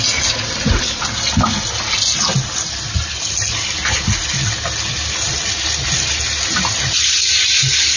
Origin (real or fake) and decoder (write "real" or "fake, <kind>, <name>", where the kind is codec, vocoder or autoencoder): real